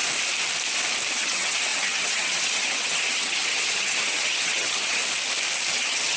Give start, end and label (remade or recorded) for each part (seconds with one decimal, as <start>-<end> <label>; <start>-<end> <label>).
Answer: 0.0-1.1 recorded; 1.1-5.0 remade; 5.0-5.7 recorded; 5.7-6.2 remade